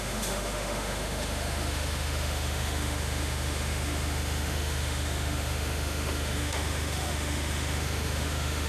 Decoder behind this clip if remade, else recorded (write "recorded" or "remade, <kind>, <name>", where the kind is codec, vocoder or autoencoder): remade, autoencoder, DAC-VAE